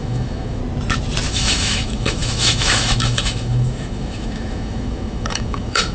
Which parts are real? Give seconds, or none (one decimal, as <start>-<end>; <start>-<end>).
0.6-1.3